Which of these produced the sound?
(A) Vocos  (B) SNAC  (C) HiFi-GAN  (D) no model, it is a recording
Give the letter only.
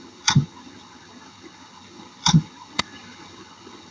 C